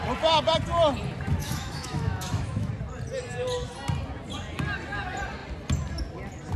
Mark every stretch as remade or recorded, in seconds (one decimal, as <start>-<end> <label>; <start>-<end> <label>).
0.0-1.4 recorded; 1.4-2.7 remade; 2.7-6.6 recorded